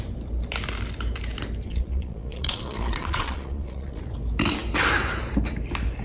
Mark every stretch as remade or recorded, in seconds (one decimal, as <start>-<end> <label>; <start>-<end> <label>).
0.0-1.7 recorded; 1.7-4.0 remade; 4.0-6.0 recorded